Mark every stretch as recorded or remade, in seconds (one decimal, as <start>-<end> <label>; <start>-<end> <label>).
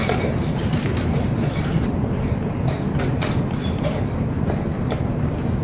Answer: 0.0-5.6 recorded